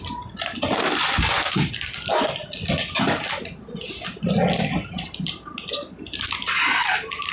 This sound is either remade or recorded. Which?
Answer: recorded